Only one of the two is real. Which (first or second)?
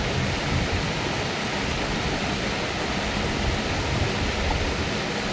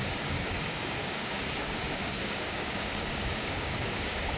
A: first